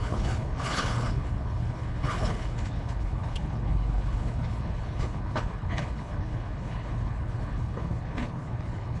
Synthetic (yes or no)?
yes